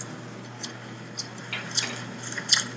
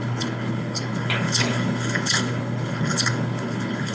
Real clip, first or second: first